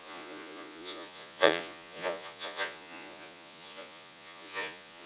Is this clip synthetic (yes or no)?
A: yes